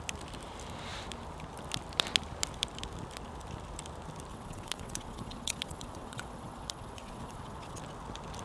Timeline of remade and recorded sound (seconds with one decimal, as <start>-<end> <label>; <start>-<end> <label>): 0.0-4.3 recorded; 4.3-7.8 remade; 7.8-8.4 recorded